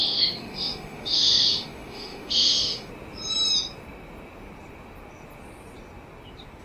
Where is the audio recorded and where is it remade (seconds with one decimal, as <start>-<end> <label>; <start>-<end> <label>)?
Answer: 0.0-2.9 remade; 2.9-6.6 recorded